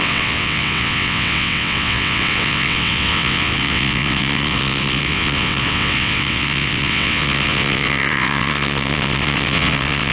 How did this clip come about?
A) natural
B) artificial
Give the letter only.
B